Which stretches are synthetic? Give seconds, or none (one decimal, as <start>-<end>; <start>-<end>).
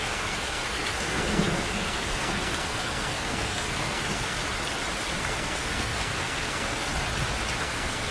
0.0-4.4; 5.2-6.9; 7.6-8.1